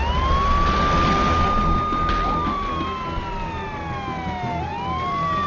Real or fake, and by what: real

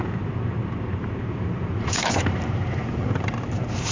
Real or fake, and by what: fake, vocoder, BigVGAN v2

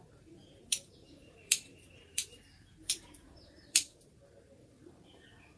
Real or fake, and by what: fake, vocoder, BigVGAN v2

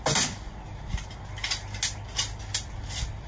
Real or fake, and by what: real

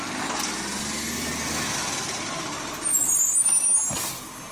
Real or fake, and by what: real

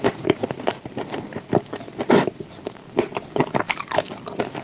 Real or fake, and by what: fake, vocoder, BigVGAN v2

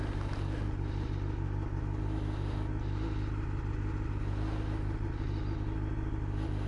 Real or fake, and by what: real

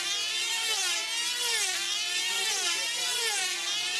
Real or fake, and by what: real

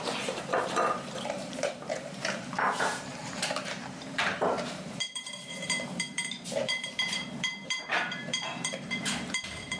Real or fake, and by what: fake, vocoder, BigVGAN v2